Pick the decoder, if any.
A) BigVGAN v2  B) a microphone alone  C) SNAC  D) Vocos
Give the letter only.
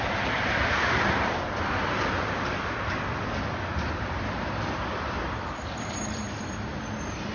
A